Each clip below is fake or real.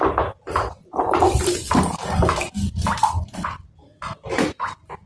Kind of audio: real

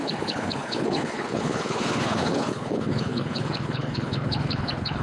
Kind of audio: fake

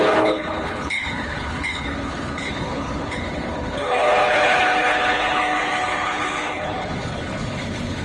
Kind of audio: fake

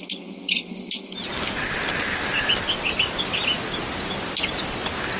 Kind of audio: real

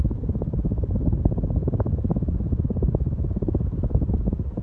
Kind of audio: real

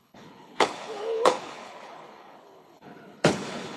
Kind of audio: fake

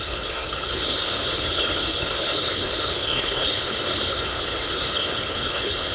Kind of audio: fake